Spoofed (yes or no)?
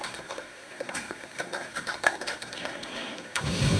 yes